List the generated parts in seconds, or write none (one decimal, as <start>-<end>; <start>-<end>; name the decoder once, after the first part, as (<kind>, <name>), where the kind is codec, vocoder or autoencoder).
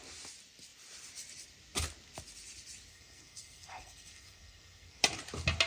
2.9-5.0 (codec, SNAC)